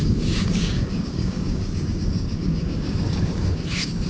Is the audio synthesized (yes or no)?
yes